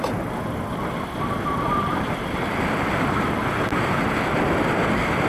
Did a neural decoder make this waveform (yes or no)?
no